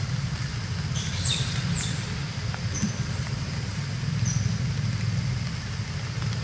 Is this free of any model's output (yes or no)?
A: yes